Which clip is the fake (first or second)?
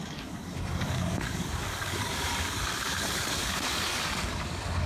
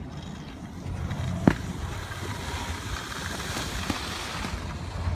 first